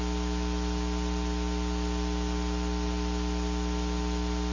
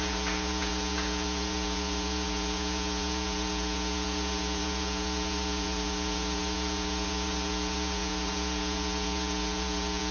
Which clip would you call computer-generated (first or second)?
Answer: second